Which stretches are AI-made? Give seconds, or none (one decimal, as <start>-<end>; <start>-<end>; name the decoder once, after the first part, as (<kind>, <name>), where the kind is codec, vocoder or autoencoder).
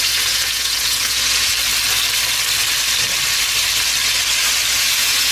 0.0-1.5 (vocoder, Vocos); 4.7-5.3